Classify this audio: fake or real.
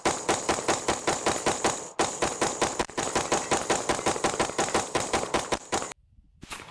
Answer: real